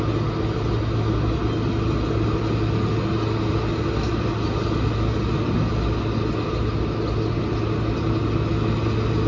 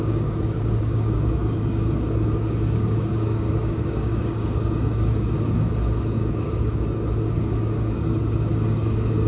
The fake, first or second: second